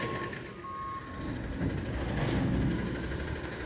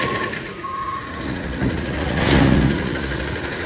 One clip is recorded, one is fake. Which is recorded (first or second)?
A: first